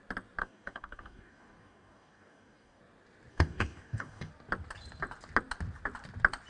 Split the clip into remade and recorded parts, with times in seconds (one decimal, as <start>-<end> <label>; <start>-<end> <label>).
0.0-0.4 recorded; 0.4-2.8 remade; 2.8-3.3 recorded; 3.3-4.3 remade; 4.3-6.5 recorded